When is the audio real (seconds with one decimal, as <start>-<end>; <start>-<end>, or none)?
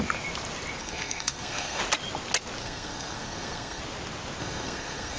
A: 0.0-0.8; 1.8-2.6; 3.8-4.4